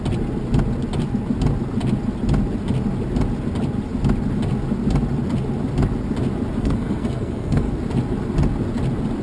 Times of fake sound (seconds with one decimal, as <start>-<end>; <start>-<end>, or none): 6.6-7.7